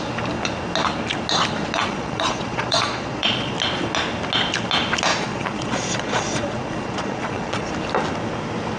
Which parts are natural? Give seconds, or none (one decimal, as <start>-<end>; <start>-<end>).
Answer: 0.0-1.8; 3.5-5.1; 7.7-8.8